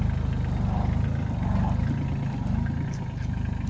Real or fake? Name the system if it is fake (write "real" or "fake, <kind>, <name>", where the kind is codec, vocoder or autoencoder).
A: real